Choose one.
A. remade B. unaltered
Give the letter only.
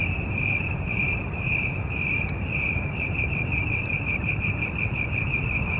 A